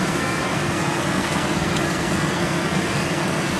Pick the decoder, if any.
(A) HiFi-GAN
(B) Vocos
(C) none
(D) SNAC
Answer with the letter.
D